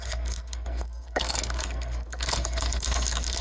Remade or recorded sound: remade